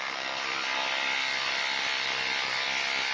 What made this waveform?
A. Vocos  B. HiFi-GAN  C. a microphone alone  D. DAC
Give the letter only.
C